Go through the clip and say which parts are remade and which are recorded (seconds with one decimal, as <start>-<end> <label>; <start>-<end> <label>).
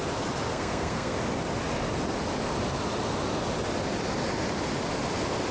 0.0-0.5 recorded; 0.5-1.2 remade; 1.2-5.5 recorded